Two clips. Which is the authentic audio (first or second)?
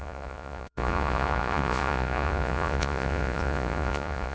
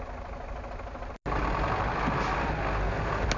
second